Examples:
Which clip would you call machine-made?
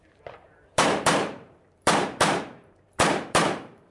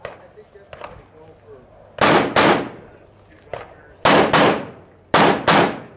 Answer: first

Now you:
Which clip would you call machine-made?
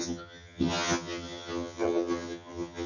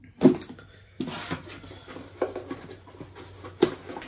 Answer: first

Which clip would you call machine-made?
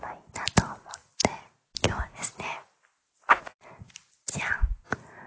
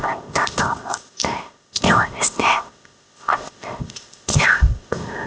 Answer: second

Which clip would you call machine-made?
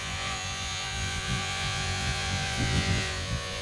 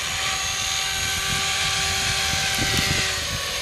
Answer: first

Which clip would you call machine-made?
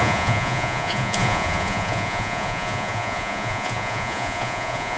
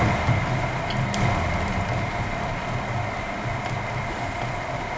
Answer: first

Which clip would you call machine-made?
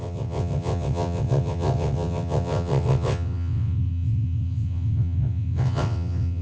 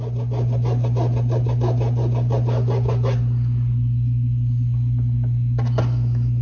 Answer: first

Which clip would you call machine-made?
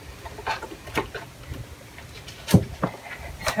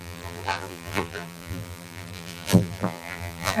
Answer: second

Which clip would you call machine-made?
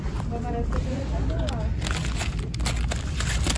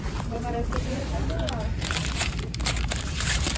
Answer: second